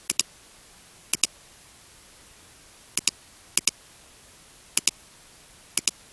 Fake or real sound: real